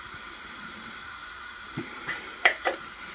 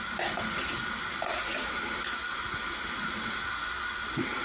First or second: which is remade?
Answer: first